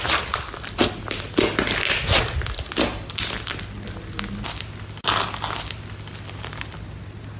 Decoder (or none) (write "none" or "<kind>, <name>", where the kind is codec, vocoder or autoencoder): none